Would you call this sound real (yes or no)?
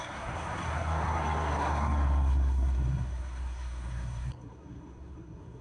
no